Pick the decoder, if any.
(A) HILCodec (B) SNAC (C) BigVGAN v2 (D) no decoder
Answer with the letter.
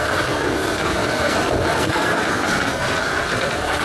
B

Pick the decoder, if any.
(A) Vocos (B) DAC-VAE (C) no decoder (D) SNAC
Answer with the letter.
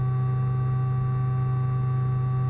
C